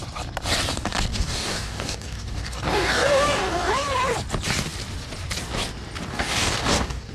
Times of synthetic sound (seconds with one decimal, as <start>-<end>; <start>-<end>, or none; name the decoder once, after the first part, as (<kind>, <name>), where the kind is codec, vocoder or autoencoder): 1.1-3.7 (codec, DAC); 6.1-7.1